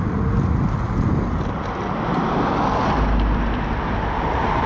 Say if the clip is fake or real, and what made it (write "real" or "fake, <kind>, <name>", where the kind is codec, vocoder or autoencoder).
fake, vocoder, BigVGAN v2